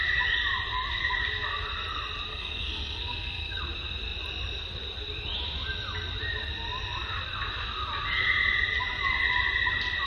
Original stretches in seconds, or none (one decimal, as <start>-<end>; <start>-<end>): 0.0-2.3; 3.6-10.1